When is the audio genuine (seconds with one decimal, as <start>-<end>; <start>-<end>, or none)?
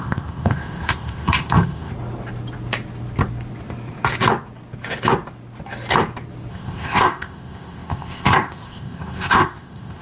1.9-6.5